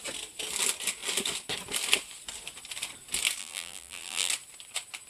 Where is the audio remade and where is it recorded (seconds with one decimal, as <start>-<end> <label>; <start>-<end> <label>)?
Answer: 0.0-3.4 recorded; 3.4-4.3 remade; 4.3-5.1 recorded